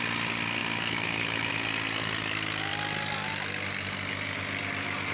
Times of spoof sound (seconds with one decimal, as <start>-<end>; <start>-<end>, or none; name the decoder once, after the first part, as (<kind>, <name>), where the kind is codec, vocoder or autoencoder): 0.6-1.5 (autoencoder, DAC-VAE)